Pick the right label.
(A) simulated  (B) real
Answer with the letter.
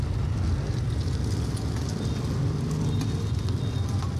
B